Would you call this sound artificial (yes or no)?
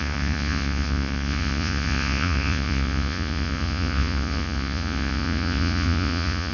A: yes